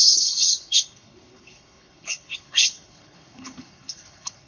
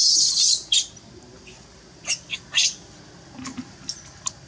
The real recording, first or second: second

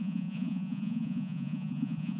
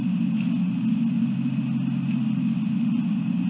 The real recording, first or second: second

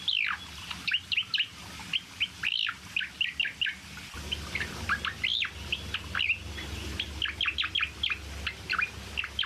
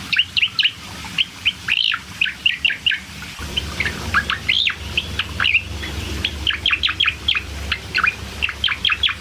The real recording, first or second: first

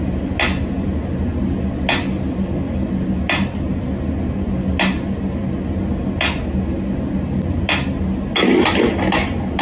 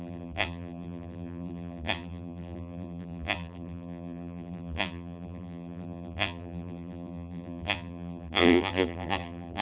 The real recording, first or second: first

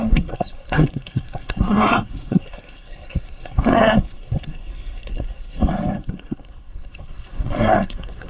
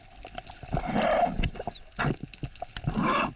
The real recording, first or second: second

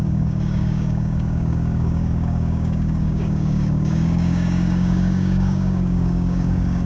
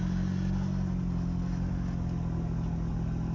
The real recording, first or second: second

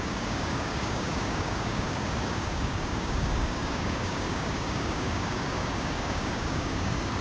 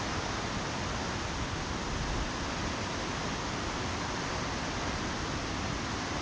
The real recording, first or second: second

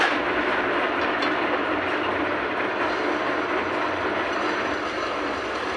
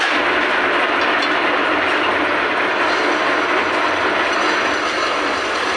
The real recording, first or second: second